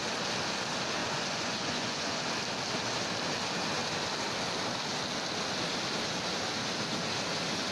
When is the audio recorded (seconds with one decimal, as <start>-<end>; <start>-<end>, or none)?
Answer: 0.0-1.0; 2.2-7.7